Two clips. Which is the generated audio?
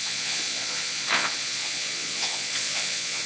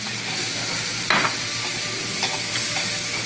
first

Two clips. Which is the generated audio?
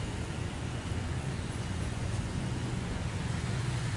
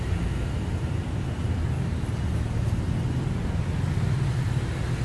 first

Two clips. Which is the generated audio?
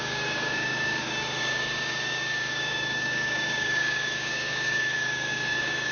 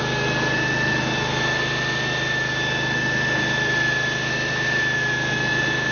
first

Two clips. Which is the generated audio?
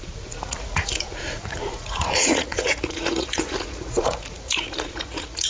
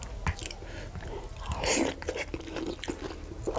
first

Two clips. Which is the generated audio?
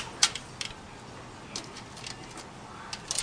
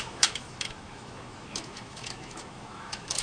second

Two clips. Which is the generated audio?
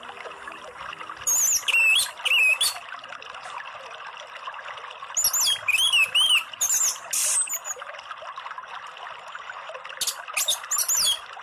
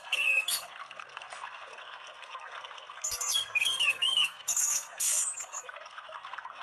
second